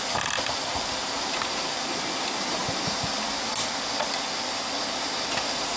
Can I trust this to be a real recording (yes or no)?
yes